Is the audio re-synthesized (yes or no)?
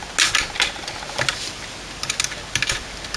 no